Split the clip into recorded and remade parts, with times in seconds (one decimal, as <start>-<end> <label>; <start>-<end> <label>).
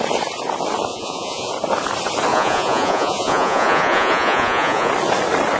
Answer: 0.0-0.9 recorded; 0.9-1.5 remade; 1.5-2.3 recorded; 2.3-4.9 remade; 4.9-5.6 recorded